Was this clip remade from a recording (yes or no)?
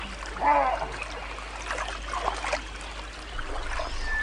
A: no